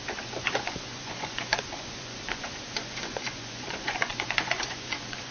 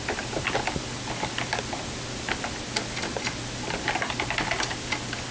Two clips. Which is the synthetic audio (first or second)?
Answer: first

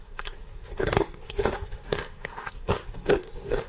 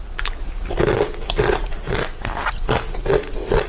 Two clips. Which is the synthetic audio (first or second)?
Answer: first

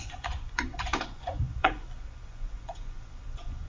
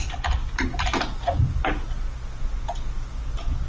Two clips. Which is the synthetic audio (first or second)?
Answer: first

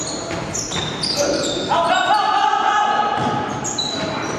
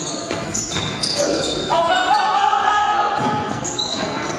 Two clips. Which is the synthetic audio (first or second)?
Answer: second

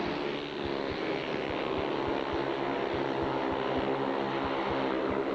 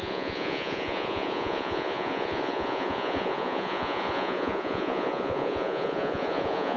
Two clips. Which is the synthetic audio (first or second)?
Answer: second